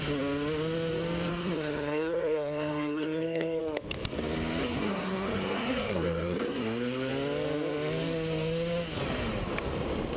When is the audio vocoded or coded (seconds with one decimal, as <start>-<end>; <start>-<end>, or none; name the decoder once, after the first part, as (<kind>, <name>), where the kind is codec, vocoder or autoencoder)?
1.3-3.6 (codec, SNAC); 4.6-7.1